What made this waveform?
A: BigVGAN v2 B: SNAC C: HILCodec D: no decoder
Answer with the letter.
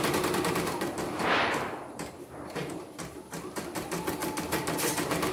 A